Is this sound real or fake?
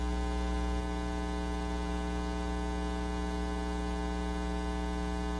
real